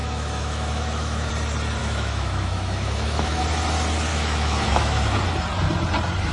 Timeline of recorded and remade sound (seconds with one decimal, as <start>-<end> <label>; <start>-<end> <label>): 0.0-1.3 remade; 1.3-1.8 recorded; 1.8-3.4 remade; 3.4-4.1 recorded; 4.1-5.2 remade; 5.2-6.3 recorded